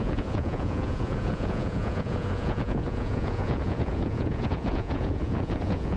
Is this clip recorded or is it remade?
remade